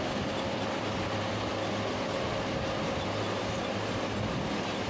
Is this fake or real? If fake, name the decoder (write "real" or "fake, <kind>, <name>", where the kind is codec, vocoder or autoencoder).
real